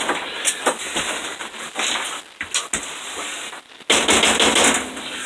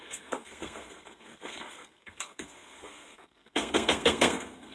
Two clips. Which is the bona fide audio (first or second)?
first